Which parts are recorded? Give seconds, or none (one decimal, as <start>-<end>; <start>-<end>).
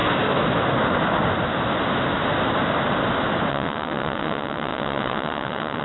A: 0.0-3.5